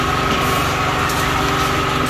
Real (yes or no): yes